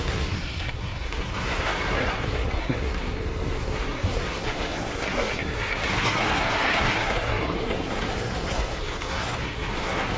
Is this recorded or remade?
remade